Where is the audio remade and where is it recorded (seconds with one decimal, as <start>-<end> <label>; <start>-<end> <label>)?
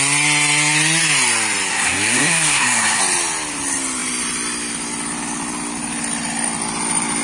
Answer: 0.0-1.7 recorded; 1.7-3.0 remade; 3.0-7.2 recorded